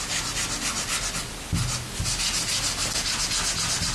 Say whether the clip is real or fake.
real